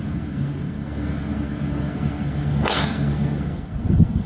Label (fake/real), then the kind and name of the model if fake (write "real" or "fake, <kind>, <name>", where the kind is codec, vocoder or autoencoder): fake, codec, SNAC